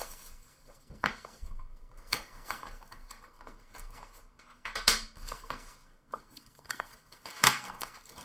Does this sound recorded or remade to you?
remade